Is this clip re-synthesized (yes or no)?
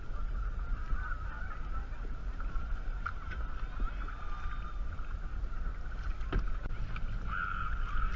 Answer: no